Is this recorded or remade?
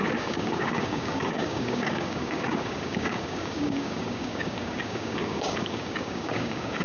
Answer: remade